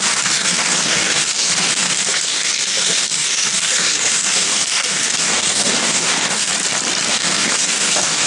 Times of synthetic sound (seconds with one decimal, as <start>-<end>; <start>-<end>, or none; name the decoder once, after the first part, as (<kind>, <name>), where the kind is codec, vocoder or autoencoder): 0.0-6.5 (codec, DAC); 7.1-8.3

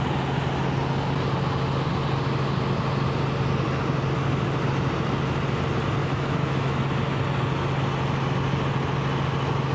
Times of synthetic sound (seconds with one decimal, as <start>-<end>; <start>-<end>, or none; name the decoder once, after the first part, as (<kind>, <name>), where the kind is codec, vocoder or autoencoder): 6.0-6.8 (autoencoder, DAC-VAE)

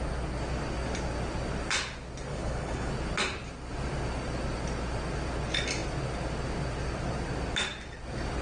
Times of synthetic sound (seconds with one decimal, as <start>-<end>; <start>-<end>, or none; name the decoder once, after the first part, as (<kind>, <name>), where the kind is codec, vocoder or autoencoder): 2.3-2.9 (codec, HILCodec)

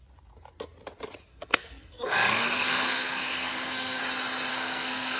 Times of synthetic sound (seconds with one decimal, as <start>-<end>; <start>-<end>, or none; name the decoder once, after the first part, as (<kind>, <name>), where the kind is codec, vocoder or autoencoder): 1.3-4.0 (codec, SNAC); 4.5-5.2

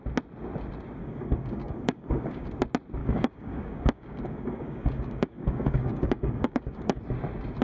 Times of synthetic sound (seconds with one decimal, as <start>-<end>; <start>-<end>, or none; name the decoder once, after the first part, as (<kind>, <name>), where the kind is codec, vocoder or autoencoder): 1.0-2.5 (codec, DAC); 3.0-7.0